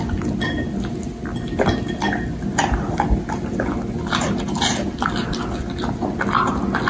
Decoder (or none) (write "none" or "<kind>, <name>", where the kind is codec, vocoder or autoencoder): none